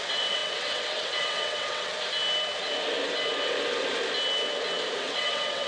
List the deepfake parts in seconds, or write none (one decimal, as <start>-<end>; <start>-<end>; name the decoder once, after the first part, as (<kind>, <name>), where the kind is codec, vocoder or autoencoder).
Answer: 0.0-1.9 (vocoder, WaveNeXt); 5.0-5.7